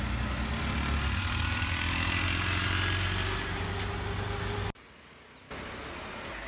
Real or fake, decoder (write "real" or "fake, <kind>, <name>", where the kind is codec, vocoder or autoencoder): real